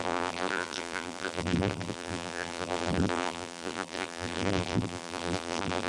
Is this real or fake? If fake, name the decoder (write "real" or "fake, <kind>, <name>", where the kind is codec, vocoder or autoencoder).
fake, vocoder, BigVGAN v2